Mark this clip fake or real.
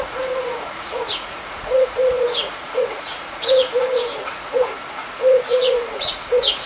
fake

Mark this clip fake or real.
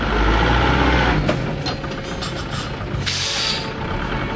real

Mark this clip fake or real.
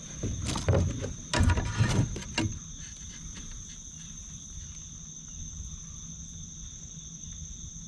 real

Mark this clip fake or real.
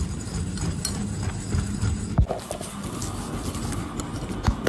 real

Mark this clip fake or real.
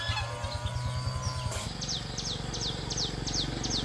real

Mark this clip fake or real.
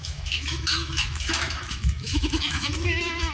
fake